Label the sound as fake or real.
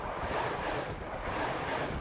real